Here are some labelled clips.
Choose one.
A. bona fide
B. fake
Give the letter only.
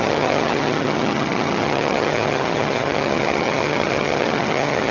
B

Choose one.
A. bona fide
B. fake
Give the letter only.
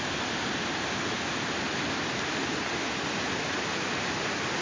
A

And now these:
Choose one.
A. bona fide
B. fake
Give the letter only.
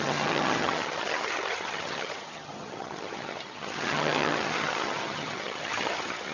B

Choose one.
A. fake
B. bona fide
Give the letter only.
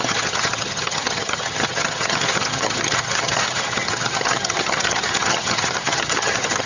A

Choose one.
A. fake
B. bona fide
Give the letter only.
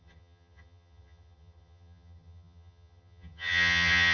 A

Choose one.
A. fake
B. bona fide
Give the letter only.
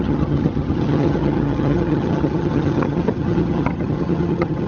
A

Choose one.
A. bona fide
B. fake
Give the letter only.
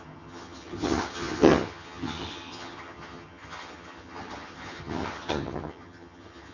B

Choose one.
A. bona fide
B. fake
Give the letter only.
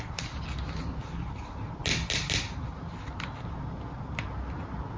A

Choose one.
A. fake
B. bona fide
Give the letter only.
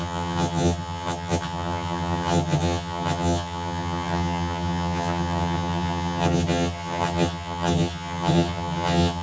A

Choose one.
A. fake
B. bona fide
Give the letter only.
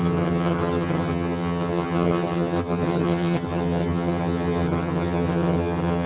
A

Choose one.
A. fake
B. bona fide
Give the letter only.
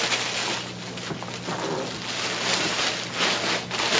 B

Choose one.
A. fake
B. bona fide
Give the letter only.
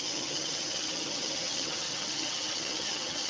A